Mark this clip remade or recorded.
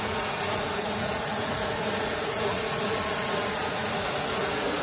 remade